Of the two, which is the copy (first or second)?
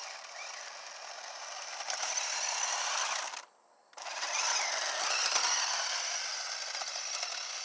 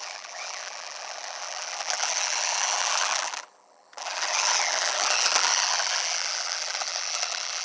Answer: second